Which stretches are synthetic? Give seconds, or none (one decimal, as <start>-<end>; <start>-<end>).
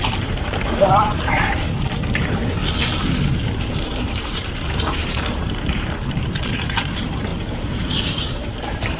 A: 0.0-2.6; 3.7-9.0